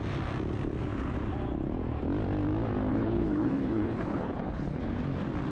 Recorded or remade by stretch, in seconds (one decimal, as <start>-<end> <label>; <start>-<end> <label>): 0.0-2.9 recorded; 2.9-4.8 remade; 4.8-5.5 recorded